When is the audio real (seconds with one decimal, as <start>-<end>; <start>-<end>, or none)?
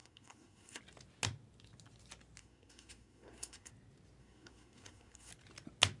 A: 0.8-2.4; 3.7-4.2; 5.3-6.0